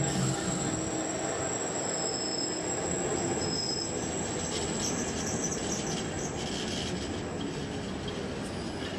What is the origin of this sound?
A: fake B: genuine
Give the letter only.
B